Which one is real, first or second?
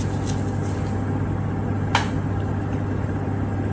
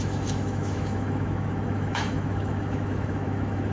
first